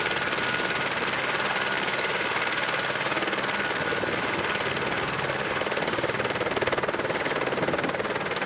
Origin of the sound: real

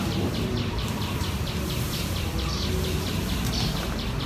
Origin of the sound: fake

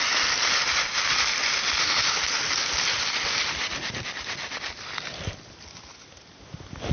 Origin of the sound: real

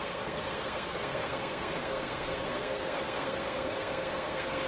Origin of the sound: fake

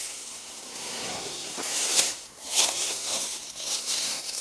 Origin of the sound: fake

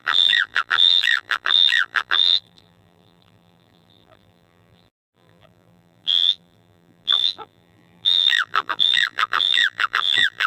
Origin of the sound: fake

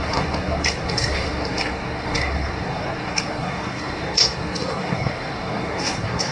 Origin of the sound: fake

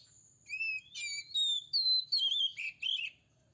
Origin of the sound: real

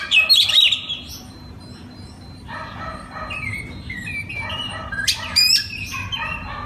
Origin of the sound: fake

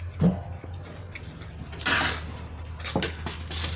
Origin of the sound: real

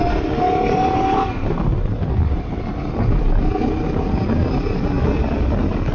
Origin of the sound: real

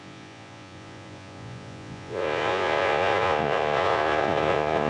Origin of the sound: fake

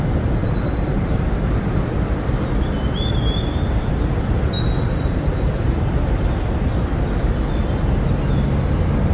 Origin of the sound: real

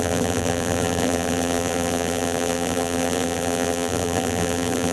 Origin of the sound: fake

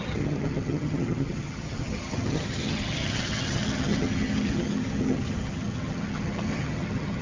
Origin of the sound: fake